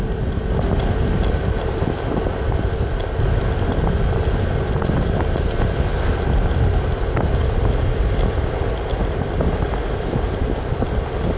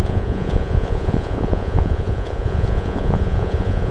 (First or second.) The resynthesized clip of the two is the second